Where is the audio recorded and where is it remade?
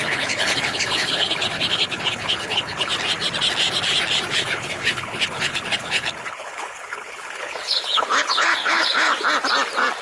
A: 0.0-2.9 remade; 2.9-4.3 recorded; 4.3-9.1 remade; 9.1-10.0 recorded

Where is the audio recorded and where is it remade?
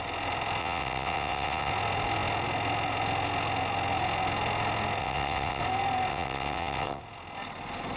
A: 0.0-0.6 recorded; 0.6-1.7 remade; 1.7-5.0 recorded; 5.0-5.6 remade; 5.6-6.1 recorded; 6.1-7.0 remade; 7.0-8.0 recorded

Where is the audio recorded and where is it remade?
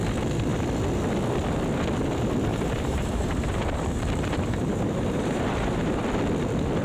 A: 0.0-2.5 recorded; 2.5-6.0 remade; 6.0-6.8 recorded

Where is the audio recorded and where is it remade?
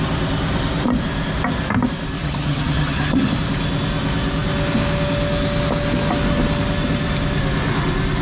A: 0.0-2.2 recorded; 2.2-3.3 remade; 3.3-8.2 recorded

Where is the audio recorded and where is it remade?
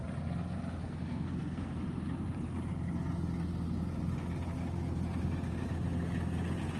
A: 0.0-0.8 recorded; 0.8-1.8 remade; 1.8-6.8 recorded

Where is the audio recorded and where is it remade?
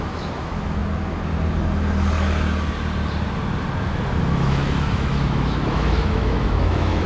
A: 0.0-0.8 remade; 0.8-4.2 recorded; 4.2-7.1 remade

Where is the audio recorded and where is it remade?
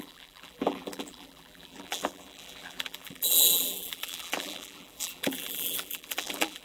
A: 0.0-6.6 remade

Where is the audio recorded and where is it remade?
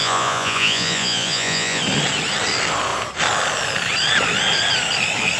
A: 0.0-1.8 remade; 1.8-5.4 recorded